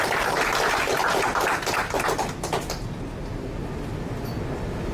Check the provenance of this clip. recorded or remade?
recorded